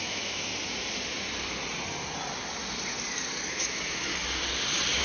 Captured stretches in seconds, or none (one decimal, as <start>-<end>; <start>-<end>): 0.5-3.5; 4.1-5.0